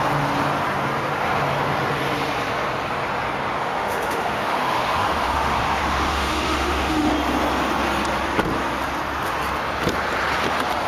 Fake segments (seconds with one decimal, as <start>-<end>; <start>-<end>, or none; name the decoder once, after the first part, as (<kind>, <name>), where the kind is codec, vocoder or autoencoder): 3.6-7.1 (autoencoder, DAC-VAE)